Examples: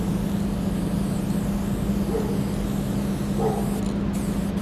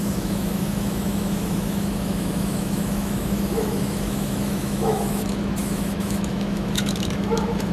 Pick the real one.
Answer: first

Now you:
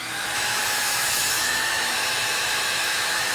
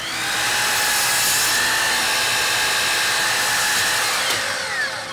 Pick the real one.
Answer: second